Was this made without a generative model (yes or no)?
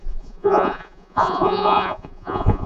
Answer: no